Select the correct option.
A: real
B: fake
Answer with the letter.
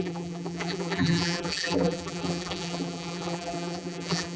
B